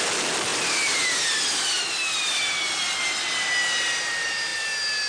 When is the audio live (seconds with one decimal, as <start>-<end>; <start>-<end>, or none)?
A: 0.0-5.1